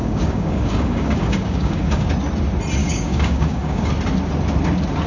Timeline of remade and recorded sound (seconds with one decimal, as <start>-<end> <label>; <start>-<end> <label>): 0.0-2.1 remade; 2.1-2.8 recorded; 2.8-3.9 remade; 3.9-5.1 recorded